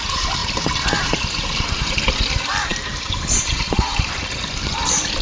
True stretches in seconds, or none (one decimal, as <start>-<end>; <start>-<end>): none